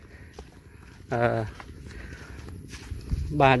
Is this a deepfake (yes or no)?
no